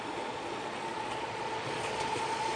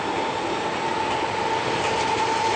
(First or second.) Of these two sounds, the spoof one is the first